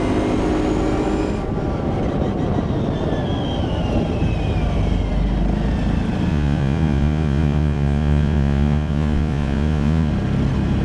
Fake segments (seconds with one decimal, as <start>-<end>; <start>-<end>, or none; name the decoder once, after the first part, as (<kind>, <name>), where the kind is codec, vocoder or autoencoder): 6.3-10.1 (vocoder, Vocos)

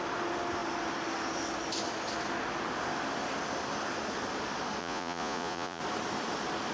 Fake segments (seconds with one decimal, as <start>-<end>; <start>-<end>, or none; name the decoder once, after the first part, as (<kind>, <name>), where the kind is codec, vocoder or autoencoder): 4.8-5.8 (vocoder, Vocos)

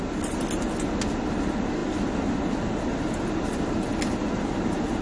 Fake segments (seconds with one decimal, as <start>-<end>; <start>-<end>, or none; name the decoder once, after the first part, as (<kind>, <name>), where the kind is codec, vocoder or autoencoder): none

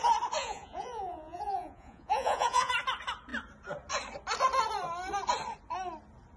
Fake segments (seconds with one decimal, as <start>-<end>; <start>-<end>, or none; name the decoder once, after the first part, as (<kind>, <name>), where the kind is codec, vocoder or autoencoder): 0.4-2.7 (vocoder, Vocos)

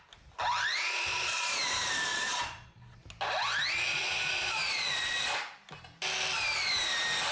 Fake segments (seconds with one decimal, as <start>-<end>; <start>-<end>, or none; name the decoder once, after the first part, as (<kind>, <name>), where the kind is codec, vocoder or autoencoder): 0.7-1.6 (vocoder, Vocos); 2.1-3.0; 3.9-5.3